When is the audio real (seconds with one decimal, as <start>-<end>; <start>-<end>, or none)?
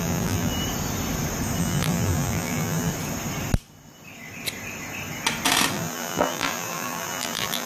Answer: 0.5-1.6; 2.9-5.7